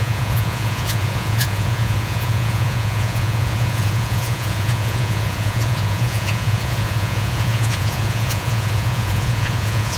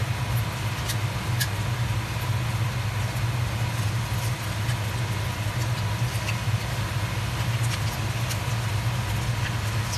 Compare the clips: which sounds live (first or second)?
second